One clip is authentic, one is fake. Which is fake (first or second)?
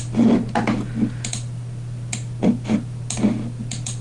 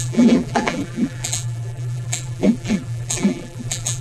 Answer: second